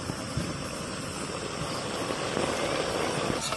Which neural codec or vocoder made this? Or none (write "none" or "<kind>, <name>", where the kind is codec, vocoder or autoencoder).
none